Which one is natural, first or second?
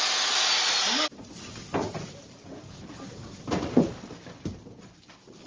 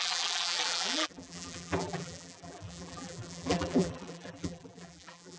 first